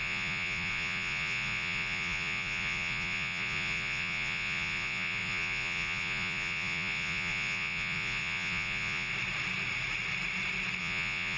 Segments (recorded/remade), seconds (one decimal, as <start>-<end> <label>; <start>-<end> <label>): 0.0-9.1 remade; 9.1-10.8 recorded; 10.8-11.4 remade